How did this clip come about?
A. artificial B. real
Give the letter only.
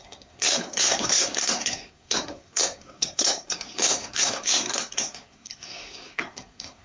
A